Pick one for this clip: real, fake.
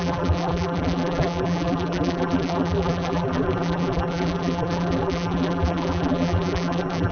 fake